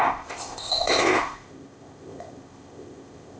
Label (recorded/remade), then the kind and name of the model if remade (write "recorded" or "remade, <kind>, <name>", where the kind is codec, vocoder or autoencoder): remade, codec, ZipCodec